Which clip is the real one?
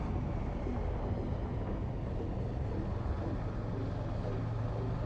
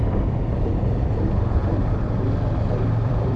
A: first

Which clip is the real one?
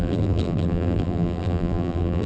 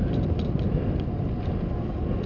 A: second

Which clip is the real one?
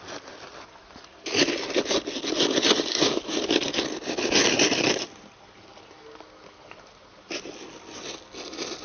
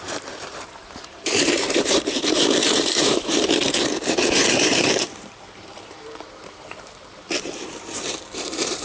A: first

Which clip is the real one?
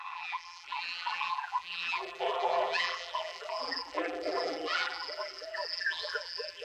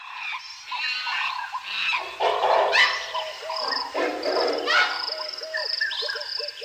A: second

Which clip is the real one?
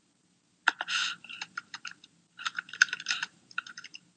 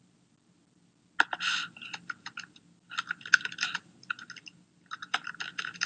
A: second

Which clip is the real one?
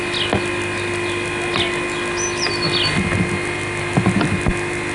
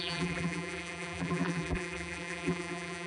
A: first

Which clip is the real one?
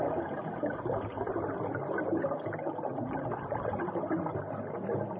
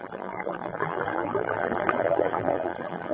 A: first